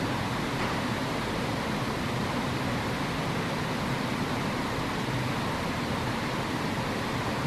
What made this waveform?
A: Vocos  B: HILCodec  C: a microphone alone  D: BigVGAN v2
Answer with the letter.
C